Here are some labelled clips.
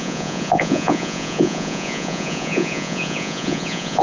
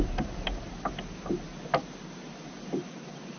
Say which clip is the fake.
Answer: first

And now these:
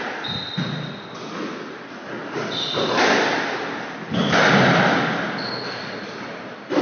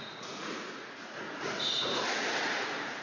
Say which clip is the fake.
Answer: second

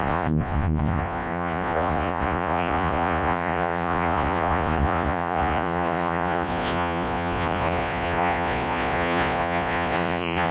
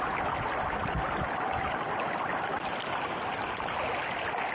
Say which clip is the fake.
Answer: first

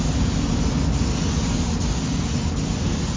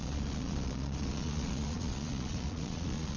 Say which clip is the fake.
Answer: second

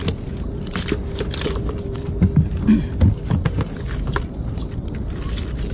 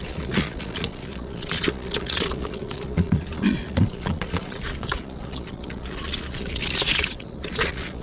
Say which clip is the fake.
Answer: second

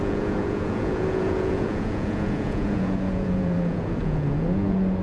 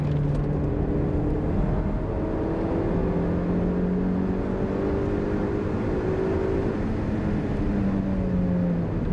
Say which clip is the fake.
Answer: first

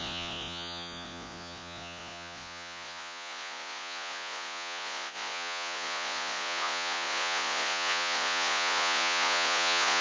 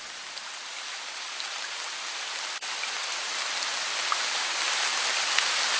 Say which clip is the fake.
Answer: first